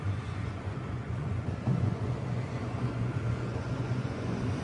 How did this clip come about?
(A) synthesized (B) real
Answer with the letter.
A